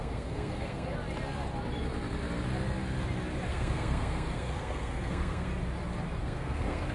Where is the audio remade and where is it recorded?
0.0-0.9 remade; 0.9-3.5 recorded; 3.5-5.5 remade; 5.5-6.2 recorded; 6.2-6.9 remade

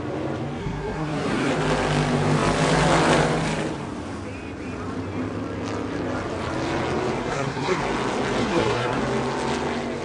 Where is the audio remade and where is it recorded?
0.0-0.6 recorded; 0.6-1.5 remade; 1.5-7.2 recorded; 7.2-7.8 remade; 7.8-8.4 recorded; 8.4-9.0 remade; 9.0-10.0 recorded

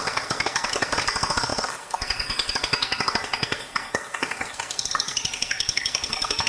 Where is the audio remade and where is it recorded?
0.0-6.5 remade